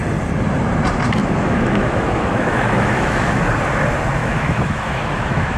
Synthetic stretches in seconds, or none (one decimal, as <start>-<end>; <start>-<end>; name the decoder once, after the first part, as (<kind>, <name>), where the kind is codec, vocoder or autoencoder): 1.2-3.4 (autoencoder, DAC-VAE); 4.2-5.6